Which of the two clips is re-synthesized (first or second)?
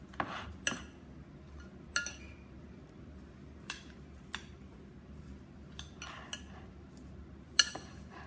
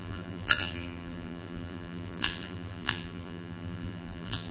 second